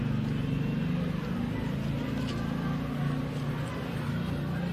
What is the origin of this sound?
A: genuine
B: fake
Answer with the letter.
A